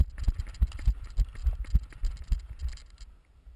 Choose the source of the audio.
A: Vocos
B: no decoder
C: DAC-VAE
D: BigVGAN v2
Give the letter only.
B